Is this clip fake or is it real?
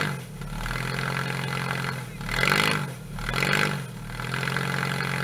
real